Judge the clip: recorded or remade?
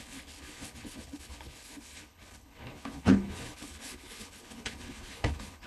remade